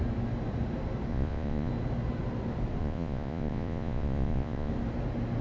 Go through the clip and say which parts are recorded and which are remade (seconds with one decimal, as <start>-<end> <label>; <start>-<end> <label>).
0.0-1.1 recorded; 1.1-1.7 remade; 1.7-2.8 recorded; 2.8-4.7 remade; 4.7-5.4 recorded